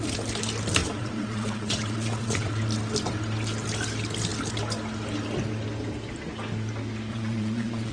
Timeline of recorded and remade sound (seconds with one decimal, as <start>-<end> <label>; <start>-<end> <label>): 0.0-0.8 recorded; 0.8-2.6 remade; 2.6-7.1 recorded; 7.1-7.9 remade